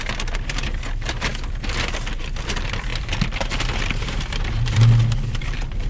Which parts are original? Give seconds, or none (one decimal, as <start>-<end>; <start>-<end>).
1.3-2.2